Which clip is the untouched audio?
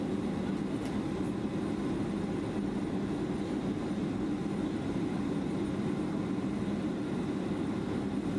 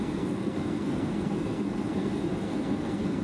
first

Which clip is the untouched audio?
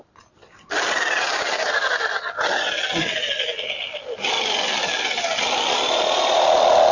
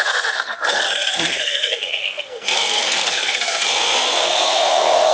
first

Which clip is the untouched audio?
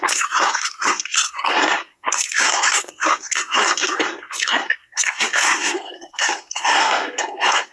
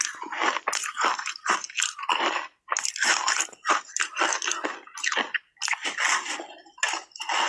second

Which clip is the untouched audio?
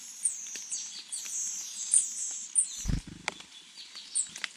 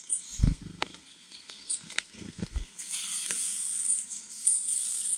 first